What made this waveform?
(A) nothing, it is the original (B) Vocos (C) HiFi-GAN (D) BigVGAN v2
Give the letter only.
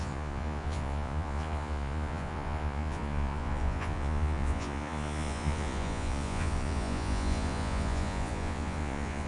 B